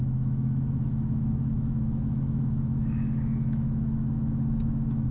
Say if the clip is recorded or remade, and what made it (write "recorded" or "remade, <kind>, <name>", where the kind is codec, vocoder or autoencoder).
remade, autoencoder, DAC-VAE